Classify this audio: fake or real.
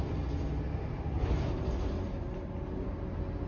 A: real